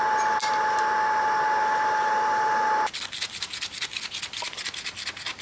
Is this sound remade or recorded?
recorded